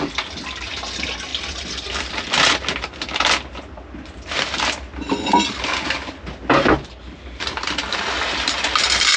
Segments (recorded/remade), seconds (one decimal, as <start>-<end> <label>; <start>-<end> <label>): 0.0-1.3 recorded; 1.3-2.6 remade; 2.6-9.2 recorded